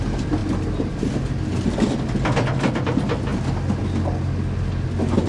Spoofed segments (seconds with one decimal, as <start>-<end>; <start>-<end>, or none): none